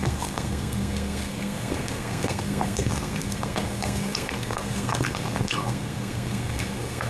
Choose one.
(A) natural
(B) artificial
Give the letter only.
B